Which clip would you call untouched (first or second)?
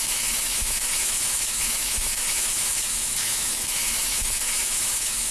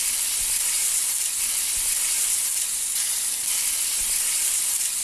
second